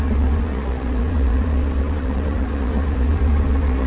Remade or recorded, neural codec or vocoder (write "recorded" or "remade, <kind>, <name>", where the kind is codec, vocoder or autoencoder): remade, vocoder, Vocos